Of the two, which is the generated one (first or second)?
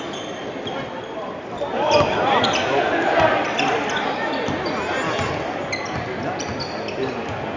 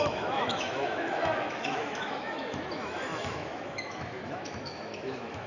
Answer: second